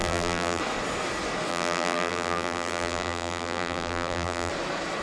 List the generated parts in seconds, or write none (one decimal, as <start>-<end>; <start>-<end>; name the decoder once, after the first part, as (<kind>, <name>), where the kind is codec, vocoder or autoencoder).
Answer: 0.0-0.6 (vocoder, BigVGAN v2); 1.5-4.5